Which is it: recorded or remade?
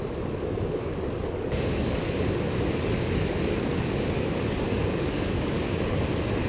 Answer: remade